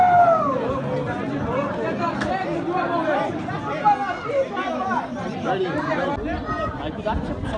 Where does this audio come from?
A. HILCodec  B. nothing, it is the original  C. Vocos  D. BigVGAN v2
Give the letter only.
B